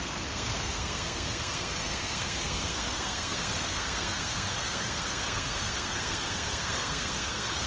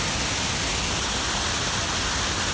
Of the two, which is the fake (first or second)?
first